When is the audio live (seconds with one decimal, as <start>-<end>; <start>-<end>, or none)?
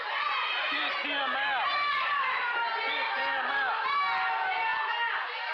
0.0-5.5